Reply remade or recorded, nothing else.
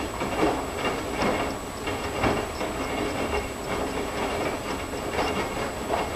recorded